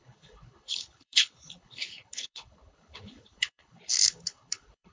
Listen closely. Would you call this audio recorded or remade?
remade